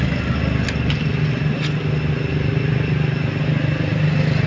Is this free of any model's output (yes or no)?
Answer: yes